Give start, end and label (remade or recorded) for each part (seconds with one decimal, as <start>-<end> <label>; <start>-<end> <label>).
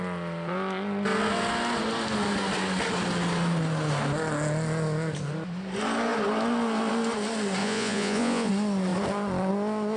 0.0-7.6 recorded; 7.6-8.5 remade; 8.5-10.0 recorded